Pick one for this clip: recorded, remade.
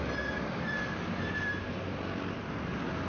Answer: recorded